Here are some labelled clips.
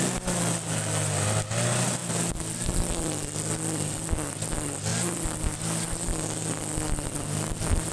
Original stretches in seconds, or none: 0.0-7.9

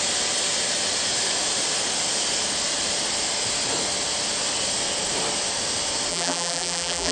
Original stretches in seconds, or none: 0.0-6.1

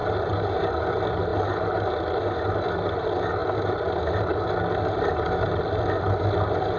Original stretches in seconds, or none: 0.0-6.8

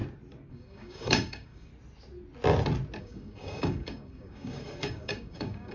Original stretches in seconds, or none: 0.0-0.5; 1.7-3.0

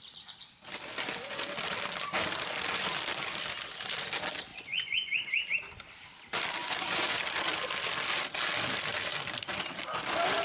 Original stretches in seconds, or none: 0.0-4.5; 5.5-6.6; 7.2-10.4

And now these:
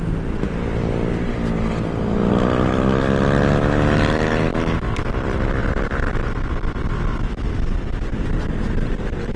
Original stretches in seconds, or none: 0.0-9.4

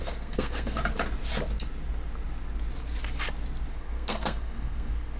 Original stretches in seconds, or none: 0.8-3.7

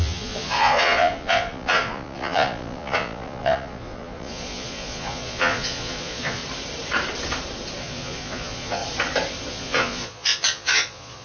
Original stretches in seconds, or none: 6.4-7.8; 8.8-9.5